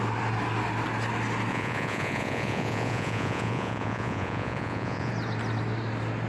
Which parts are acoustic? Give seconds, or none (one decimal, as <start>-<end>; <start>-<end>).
0.0-1.5; 5.1-6.3